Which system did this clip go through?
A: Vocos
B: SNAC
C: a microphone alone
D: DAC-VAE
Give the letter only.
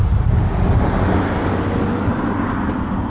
C